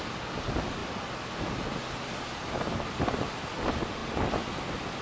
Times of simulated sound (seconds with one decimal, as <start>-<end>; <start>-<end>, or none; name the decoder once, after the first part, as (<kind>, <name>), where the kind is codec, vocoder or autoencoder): none